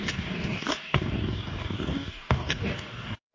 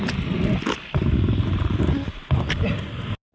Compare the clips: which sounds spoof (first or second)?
first